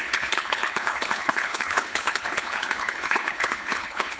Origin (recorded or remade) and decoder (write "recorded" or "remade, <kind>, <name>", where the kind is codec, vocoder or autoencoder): remade, codec, HILCodec